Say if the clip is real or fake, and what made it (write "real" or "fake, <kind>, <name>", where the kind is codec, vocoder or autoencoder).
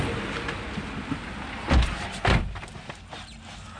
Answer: real